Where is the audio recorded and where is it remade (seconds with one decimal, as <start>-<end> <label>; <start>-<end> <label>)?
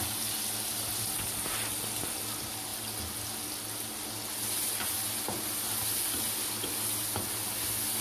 0.0-8.0 recorded